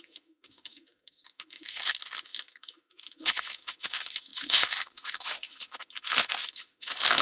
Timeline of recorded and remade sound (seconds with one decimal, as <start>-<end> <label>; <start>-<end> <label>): 0.0-7.2 remade